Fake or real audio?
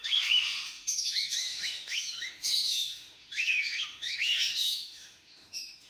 fake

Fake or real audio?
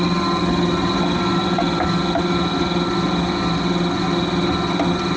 real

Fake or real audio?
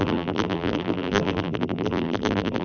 fake